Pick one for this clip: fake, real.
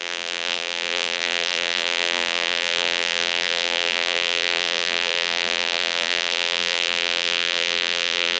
fake